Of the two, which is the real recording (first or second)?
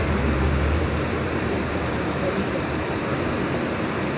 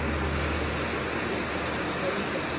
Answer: second